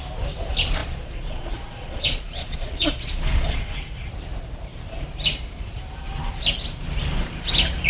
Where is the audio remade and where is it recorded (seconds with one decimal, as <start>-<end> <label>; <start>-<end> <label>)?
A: 0.0-0.8 recorded; 0.8-3.7 remade; 3.7-7.9 recorded